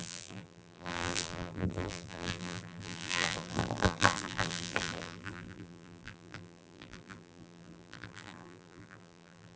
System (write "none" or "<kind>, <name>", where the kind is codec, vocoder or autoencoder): vocoder, BigVGAN v2